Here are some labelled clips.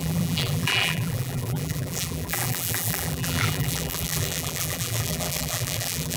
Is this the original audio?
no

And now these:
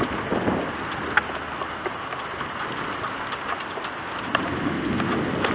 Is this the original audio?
yes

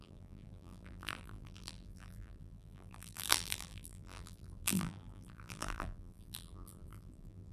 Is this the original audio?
no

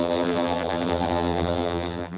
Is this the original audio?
no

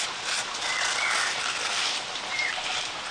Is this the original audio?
yes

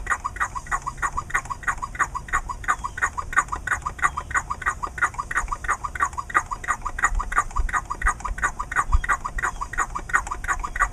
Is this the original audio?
yes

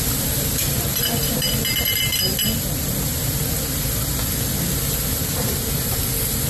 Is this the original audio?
no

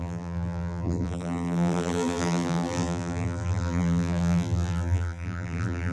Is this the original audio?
no